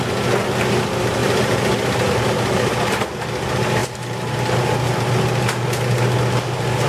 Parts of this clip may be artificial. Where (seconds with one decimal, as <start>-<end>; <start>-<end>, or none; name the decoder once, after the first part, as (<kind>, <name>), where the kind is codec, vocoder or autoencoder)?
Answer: 1.2-2.1 (vocoder, BigVGAN v2); 3.8-4.4